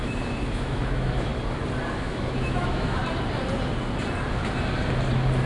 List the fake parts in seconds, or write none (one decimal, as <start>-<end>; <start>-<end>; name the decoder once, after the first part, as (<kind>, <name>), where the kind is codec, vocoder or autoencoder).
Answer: 0.0-1.3 (autoencoder, DAC-VAE); 1.9-3.0